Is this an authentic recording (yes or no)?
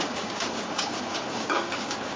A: no